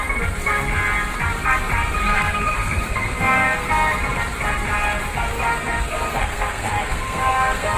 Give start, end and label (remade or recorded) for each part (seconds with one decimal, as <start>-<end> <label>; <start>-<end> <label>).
0.0-2.1 recorded; 2.1-3.7 remade; 3.7-5.5 recorded; 5.5-7.8 remade